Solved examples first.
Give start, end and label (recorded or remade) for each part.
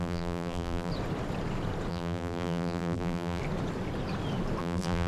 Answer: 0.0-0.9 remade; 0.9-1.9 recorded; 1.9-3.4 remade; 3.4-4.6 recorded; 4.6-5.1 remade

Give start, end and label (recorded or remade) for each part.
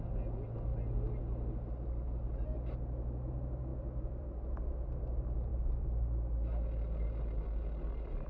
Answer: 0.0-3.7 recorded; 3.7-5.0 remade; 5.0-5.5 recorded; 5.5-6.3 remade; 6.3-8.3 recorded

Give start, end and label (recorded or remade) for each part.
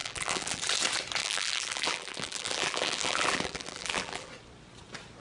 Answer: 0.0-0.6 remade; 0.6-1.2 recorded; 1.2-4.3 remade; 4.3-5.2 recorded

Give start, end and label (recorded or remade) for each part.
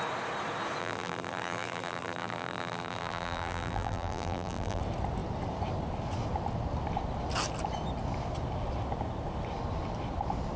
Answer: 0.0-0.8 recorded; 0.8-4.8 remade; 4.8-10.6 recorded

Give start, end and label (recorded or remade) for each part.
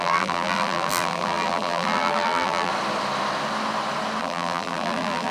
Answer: 0.0-2.7 remade; 2.7-4.2 recorded; 4.2-5.3 remade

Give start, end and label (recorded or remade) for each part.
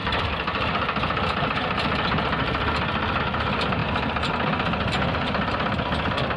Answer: 0.0-3.2 remade; 3.2-3.8 recorded; 3.8-4.3 remade; 4.3-6.4 recorded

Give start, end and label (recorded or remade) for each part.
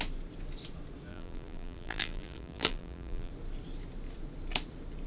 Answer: 0.0-1.1 recorded; 1.1-3.3 remade; 3.3-5.1 recorded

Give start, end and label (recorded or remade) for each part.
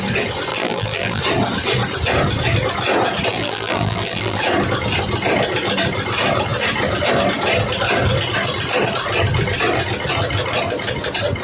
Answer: 0.0-0.5 recorded; 0.5-1.2 remade; 1.2-3.3 recorded; 3.3-4.4 remade; 4.4-11.4 recorded